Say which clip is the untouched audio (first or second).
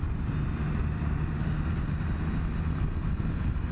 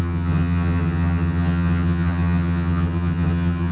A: first